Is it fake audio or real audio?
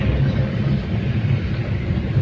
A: real